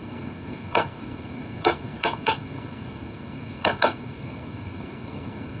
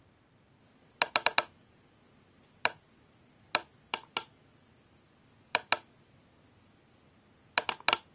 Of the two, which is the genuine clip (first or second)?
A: second